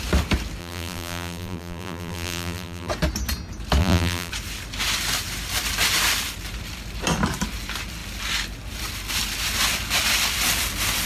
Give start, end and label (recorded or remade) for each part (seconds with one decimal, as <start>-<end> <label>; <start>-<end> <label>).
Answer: 0.0-0.6 recorded; 0.6-2.9 remade; 2.9-3.8 recorded; 3.8-4.3 remade; 4.3-11.1 recorded